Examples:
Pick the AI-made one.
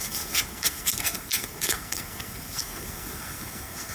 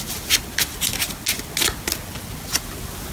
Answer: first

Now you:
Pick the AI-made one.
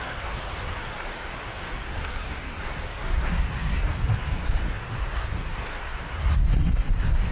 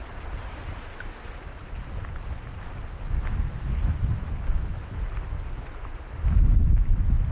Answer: first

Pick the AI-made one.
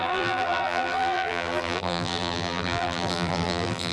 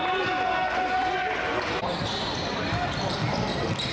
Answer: first